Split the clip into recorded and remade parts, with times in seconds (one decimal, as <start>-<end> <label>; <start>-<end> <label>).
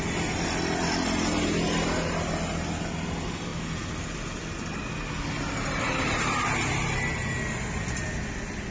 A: 0.0-8.7 recorded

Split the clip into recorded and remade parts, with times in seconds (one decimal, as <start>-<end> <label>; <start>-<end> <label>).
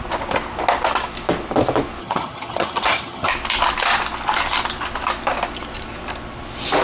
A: 0.0-2.0 recorded; 2.0-3.3 remade; 3.3-6.8 recorded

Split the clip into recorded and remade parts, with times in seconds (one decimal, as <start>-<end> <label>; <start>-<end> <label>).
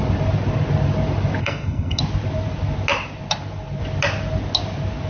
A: 0.0-1.4 recorded; 1.4-2.0 remade; 2.0-5.1 recorded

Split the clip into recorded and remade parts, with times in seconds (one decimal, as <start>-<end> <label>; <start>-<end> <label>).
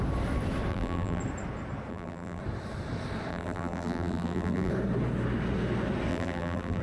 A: 0.0-0.7 recorded; 0.7-1.2 remade; 1.2-1.9 recorded; 1.9-2.4 remade; 2.4-3.3 recorded; 3.3-4.7 remade; 4.7-6.1 recorded; 6.1-6.8 remade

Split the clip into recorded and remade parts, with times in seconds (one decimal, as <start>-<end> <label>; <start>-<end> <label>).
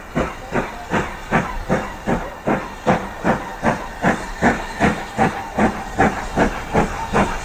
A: 0.0-7.4 recorded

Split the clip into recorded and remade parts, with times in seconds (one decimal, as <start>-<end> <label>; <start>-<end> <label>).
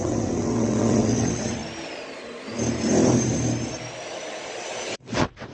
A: 0.0-1.6 remade; 1.6-4.9 recorded; 4.9-5.5 remade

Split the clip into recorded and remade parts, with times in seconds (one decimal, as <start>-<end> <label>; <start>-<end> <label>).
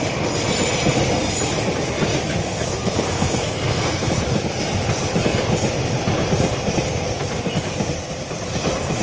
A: 0.0-2.4 recorded; 2.4-4.1 remade; 4.1-9.0 recorded